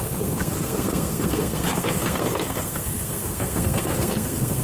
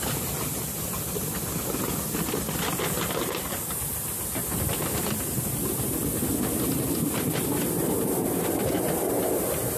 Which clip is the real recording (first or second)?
second